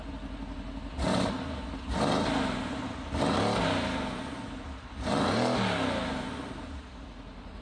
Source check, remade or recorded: recorded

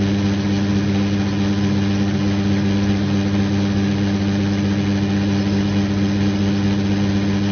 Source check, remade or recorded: recorded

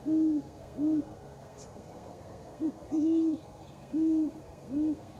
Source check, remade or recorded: remade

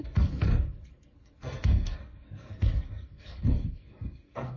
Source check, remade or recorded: remade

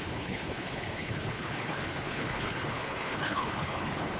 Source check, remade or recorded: remade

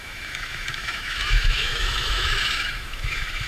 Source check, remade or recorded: remade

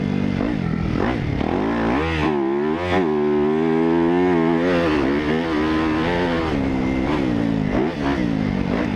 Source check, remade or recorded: recorded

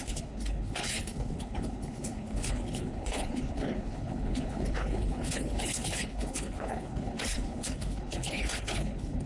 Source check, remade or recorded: remade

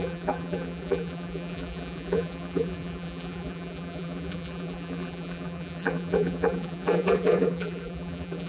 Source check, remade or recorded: remade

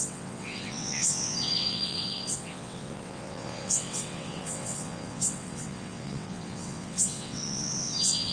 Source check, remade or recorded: remade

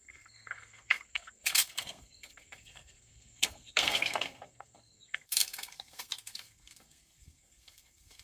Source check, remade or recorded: remade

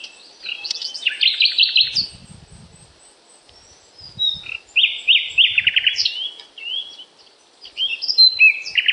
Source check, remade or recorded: recorded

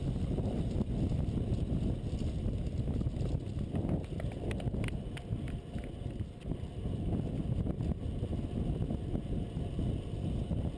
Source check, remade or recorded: recorded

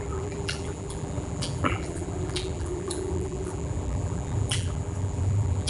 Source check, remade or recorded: remade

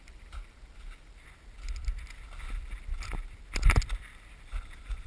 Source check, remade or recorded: recorded